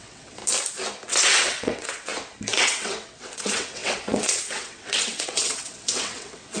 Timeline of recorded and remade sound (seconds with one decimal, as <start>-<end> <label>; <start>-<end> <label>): 0.0-0.4 remade; 0.4-1.1 recorded; 1.1-2.1 remade; 2.1-2.6 recorded; 2.6-6.6 remade